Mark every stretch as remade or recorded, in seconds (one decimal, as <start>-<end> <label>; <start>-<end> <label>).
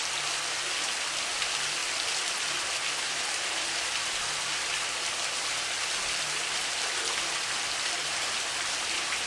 0.0-9.3 recorded